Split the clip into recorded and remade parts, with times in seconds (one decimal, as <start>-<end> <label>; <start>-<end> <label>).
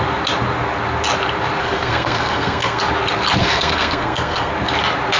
0.0-1.6 recorded; 1.6-2.8 remade; 2.8-3.4 recorded; 3.4-4.5 remade; 4.5-5.2 recorded